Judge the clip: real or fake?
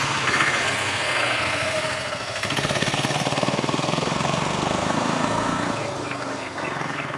fake